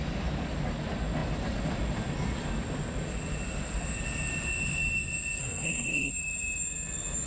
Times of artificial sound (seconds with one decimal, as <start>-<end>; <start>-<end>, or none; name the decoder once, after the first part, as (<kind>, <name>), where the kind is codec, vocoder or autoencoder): 5.4-6.1 (codec, SNAC)